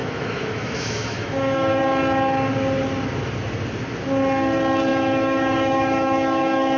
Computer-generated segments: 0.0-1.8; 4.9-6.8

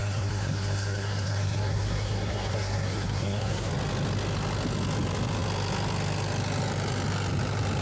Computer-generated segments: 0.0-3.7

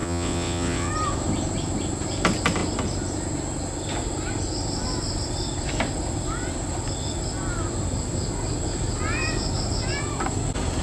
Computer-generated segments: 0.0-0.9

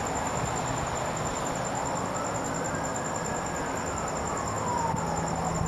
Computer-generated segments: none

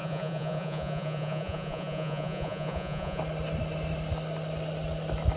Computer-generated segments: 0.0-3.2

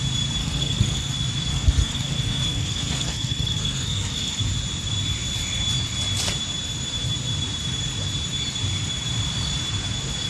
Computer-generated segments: 0.4-1.1; 1.5-4.4

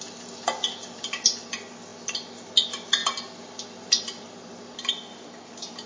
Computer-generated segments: none